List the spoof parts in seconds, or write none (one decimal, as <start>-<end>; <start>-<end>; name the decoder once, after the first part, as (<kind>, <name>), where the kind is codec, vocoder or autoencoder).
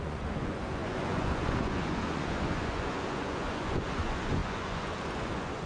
0.0-5.7 (vocoder, Vocos)